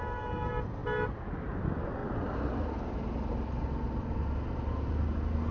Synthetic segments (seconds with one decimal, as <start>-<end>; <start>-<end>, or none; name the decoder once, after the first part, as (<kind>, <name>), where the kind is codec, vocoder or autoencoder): none